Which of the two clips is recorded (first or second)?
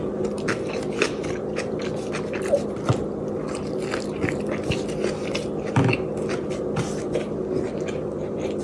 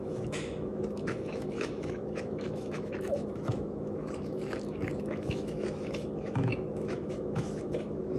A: first